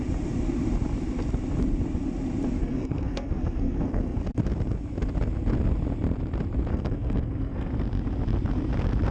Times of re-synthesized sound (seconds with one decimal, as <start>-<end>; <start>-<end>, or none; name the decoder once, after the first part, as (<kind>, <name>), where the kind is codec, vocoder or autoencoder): 2.6-4.2 (codec, SNAC); 6.7-7.7